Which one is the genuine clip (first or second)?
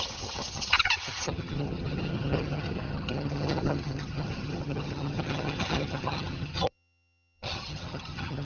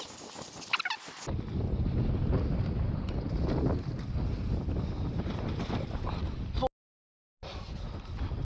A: second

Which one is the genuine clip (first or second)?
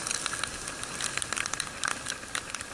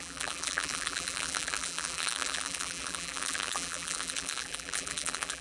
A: first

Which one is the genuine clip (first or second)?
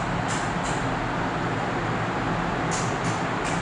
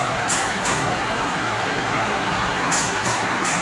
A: first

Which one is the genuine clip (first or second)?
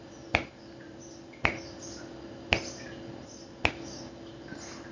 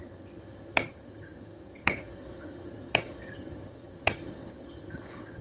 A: first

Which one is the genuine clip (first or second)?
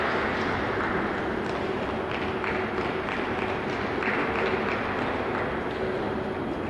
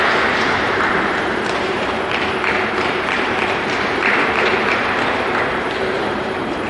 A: first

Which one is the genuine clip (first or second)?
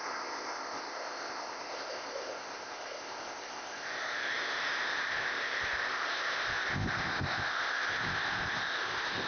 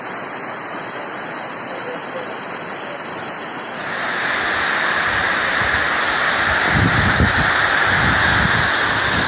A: second